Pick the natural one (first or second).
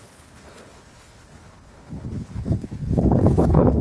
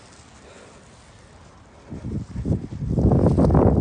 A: second